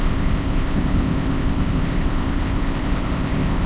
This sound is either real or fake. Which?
fake